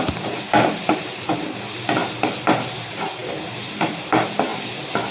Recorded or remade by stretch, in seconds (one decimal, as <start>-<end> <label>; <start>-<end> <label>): 0.0-5.1 recorded